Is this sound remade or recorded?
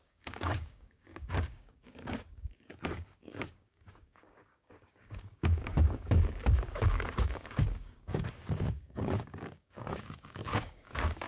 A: remade